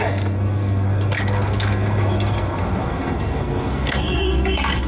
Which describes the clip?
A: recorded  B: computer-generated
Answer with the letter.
B